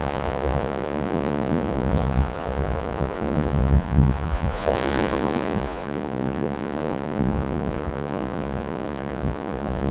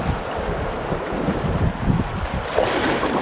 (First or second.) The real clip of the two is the second